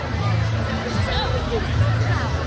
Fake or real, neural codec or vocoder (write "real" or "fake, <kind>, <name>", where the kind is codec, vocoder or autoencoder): real